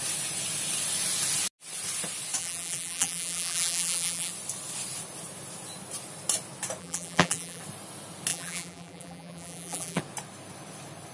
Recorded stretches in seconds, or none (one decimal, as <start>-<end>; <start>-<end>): 0.0-2.4; 4.3-6.8; 7.6-8.3; 10.0-11.1